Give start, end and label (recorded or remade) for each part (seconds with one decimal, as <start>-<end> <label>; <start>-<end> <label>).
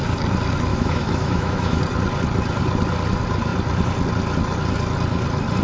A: 0.0-0.7 recorded; 0.7-1.8 remade; 1.8-5.6 recorded